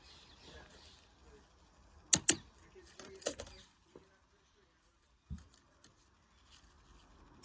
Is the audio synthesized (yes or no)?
no